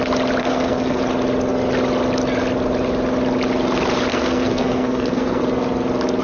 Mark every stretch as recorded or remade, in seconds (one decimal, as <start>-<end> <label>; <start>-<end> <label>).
0.0-0.4 recorded; 0.4-1.0 remade; 1.0-4.1 recorded; 4.1-5.4 remade; 5.4-6.2 recorded